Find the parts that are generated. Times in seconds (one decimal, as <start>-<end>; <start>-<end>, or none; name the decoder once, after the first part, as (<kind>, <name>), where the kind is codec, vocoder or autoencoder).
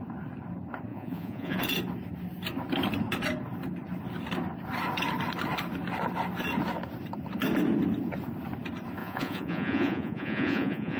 0.9-1.6 (vocoder, Vocos); 9.0-11.0